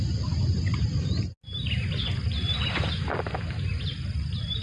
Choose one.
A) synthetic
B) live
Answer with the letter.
B